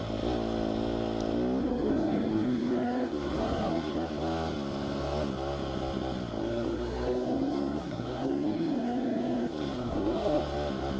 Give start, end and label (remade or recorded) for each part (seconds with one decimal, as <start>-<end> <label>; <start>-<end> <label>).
0.0-1.6 recorded; 1.6-3.9 remade; 3.9-6.4 recorded; 6.4-10.4 remade; 10.4-11.0 recorded